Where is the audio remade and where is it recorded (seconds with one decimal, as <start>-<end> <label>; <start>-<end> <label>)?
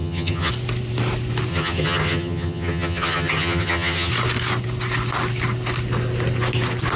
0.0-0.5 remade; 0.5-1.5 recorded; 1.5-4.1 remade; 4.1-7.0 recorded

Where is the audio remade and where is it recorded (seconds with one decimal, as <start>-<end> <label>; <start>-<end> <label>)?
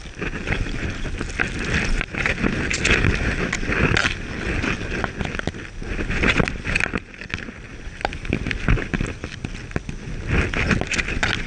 0.0-11.5 recorded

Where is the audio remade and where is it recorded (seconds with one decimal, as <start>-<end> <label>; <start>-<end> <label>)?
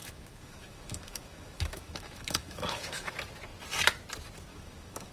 0.0-3.1 remade; 3.1-4.5 recorded; 4.5-5.1 remade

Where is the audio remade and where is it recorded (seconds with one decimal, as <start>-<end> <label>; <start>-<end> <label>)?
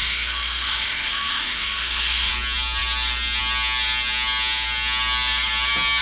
0.0-2.3 remade; 2.3-6.0 recorded